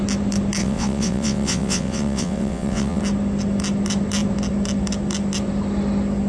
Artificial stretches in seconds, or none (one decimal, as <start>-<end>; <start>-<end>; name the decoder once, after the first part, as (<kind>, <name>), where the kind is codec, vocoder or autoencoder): 0.6-3.0 (vocoder, WaveNeXt)